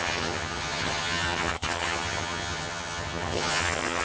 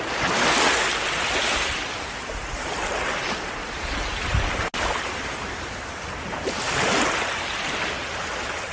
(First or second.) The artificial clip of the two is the first